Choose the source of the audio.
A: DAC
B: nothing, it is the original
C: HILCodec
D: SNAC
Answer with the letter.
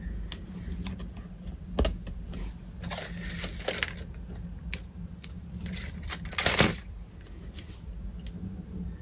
B